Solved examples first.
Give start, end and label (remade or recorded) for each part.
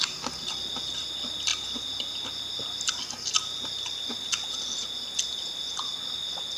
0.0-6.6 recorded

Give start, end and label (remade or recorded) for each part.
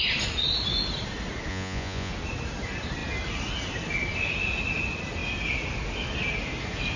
0.0-1.5 recorded; 1.5-2.1 remade; 2.1-7.0 recorded